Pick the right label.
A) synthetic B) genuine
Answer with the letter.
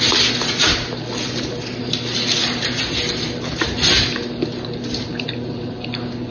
B